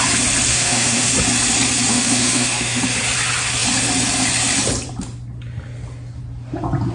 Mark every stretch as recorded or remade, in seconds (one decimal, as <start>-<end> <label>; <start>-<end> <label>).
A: 0.0-0.5 recorded; 0.5-1.1 remade; 1.1-1.9 recorded; 1.9-2.8 remade; 2.8-6.9 recorded